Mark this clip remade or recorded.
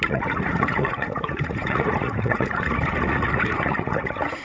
remade